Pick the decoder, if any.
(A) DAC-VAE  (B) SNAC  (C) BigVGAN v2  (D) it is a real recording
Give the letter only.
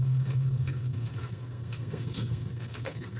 B